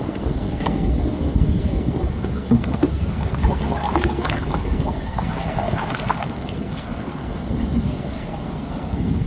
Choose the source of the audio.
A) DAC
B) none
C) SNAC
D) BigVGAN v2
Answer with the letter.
C